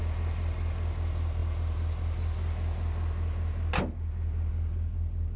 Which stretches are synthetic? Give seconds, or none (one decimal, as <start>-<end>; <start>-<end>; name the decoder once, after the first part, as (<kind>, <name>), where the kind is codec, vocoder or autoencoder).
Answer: none